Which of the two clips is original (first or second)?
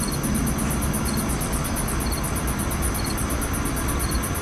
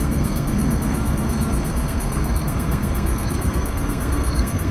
first